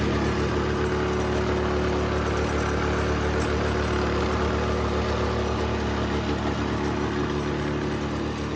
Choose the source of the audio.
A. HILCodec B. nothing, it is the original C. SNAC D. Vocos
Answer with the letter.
B